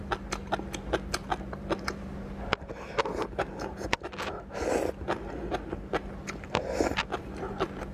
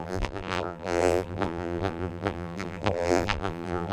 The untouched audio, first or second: first